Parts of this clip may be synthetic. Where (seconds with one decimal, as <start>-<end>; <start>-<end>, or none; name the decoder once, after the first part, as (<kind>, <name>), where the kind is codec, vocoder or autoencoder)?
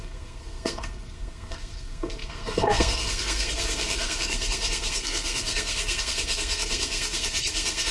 0.0-7.9 (codec, SNAC)